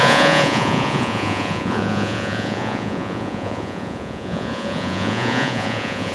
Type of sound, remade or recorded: remade